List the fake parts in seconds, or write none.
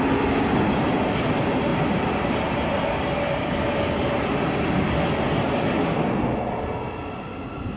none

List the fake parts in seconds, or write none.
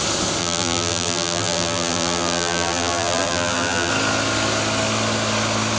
0.4-3.9 (vocoder, BigVGAN v2)